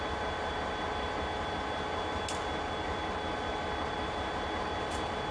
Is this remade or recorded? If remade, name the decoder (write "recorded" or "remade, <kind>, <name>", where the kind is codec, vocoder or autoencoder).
recorded